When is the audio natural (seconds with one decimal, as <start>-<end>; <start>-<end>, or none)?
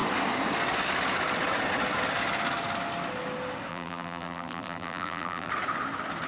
0.0-3.7; 5.5-6.3